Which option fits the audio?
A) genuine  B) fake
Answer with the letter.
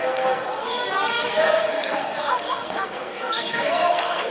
B